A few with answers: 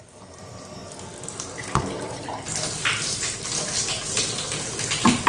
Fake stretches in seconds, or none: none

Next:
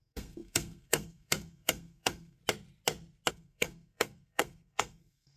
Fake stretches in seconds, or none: 0.0-2.4 (codec, SNAC); 3.3-5.4

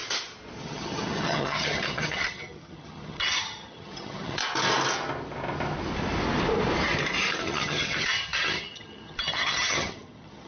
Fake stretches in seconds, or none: 0.6-4.4 (vocoder, HiFi-GAN); 7.4-10.5

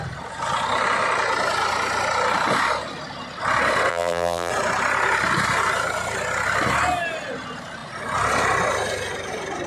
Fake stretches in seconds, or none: 3.9-4.5 (vocoder, BigVGAN v2)

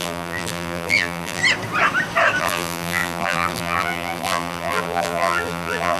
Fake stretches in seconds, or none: 0.0-1.4 (vocoder, BigVGAN v2); 2.4-6.0

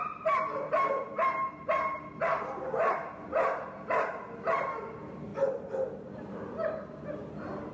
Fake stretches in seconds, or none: none

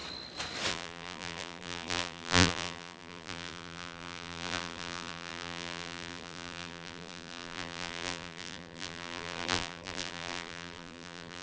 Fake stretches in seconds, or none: 0.7-11.4 (vocoder, BigVGAN v2)

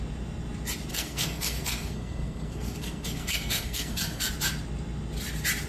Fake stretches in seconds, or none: 0.9-4.3 (codec, SNAC)